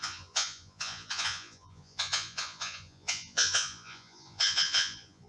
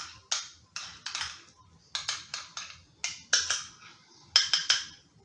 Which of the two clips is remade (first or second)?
first